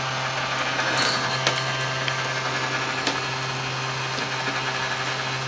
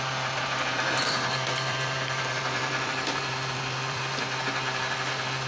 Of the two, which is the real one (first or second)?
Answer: first